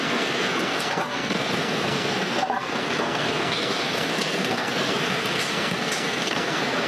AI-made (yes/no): yes